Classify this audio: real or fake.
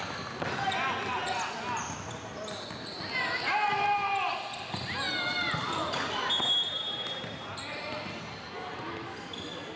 real